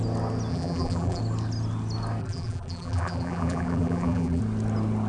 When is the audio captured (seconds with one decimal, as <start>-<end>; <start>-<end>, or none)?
0.0-0.5; 1.2-2.2; 4.4-5.1